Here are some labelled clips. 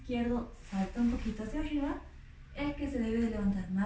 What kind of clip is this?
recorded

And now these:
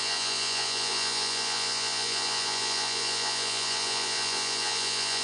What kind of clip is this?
remade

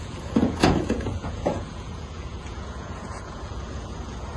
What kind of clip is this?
remade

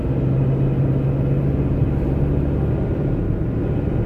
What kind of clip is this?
recorded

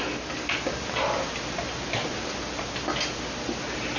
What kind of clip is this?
recorded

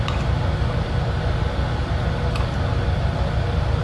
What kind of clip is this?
recorded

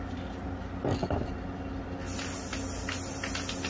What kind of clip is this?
recorded